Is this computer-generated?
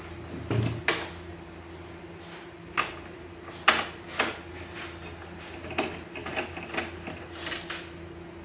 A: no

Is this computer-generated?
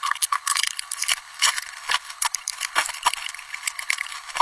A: yes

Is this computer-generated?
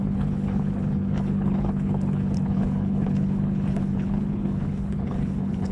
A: yes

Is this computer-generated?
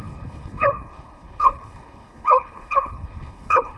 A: yes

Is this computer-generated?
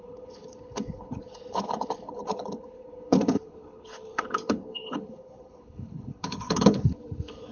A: yes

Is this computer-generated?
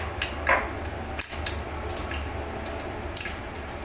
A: no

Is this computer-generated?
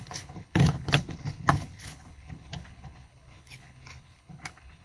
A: yes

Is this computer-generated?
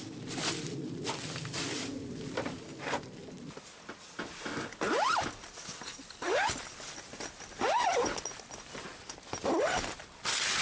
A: no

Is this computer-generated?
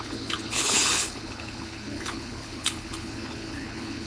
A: yes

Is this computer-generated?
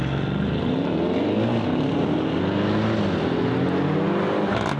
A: no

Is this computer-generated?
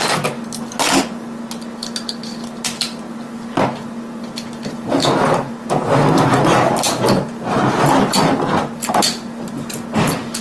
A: no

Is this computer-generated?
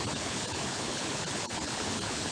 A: yes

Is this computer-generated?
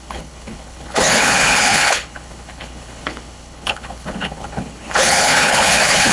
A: yes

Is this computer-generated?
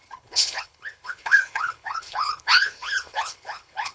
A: yes